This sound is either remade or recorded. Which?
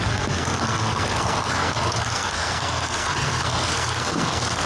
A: remade